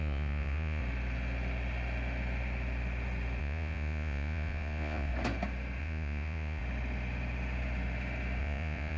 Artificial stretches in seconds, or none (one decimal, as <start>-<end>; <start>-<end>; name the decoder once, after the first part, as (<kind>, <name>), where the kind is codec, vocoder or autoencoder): 0.0-0.8 (vocoder, Vocos); 3.4-5.1; 5.8-6.6; 8.4-9.0